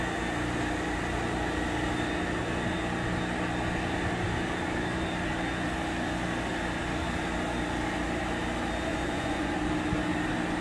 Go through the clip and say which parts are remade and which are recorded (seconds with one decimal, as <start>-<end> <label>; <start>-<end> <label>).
0.0-8.9 recorded; 8.9-9.5 remade; 9.5-10.6 recorded